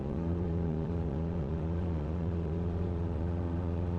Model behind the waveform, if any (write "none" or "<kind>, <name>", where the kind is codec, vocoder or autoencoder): vocoder, Vocos